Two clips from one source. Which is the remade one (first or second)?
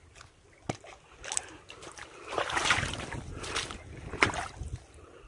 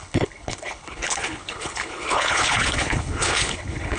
second